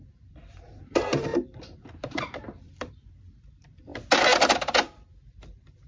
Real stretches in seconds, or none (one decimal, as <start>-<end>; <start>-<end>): 3.9-5.2

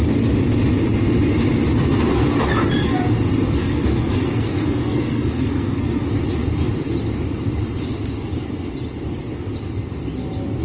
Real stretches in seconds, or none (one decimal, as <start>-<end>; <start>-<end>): 0.0-3.6; 6.0-10.6

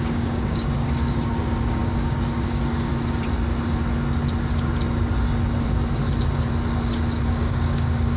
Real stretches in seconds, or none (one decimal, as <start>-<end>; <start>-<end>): 2.9-7.2

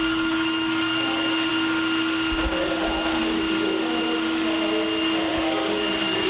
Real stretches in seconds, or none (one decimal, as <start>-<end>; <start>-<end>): 1.5-5.3

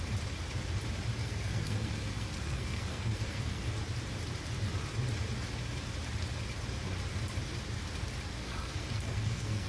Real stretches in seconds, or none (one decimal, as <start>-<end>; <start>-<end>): 0.0-1.2; 3.6-8.3

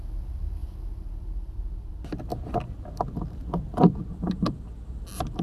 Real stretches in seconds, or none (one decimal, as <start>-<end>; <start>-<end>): 0.0-5.4